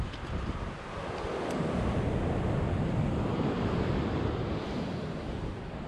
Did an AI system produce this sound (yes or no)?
no